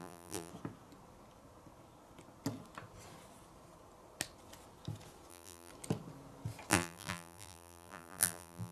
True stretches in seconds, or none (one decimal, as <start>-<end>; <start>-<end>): 0.5-5.3; 5.7-6.7